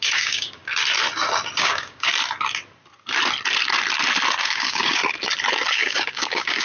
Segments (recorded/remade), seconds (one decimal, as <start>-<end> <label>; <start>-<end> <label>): 0.0-0.6 remade; 0.6-1.6 recorded; 1.6-2.1 remade; 2.1-4.4 recorded; 4.4-5.0 remade; 5.0-5.7 recorded; 5.7-6.6 remade